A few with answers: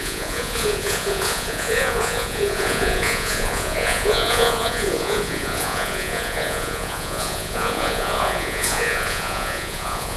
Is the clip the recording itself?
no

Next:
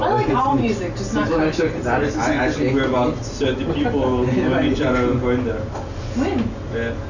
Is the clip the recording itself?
yes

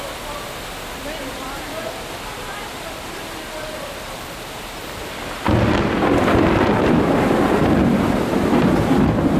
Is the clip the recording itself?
yes